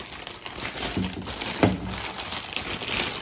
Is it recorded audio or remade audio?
recorded